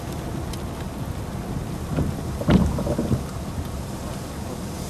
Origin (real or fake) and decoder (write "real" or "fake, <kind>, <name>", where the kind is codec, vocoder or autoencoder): real